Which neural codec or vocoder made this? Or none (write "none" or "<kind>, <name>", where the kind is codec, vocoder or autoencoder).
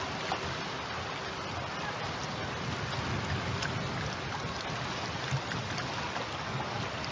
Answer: none